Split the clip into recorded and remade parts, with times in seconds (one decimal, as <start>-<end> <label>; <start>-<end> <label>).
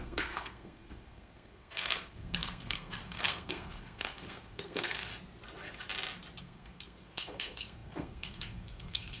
0.0-5.1 remade; 5.1-6.4 recorded; 6.4-9.2 remade